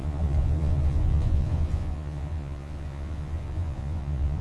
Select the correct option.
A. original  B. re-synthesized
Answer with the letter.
B